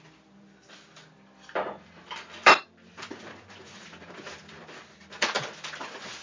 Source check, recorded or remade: remade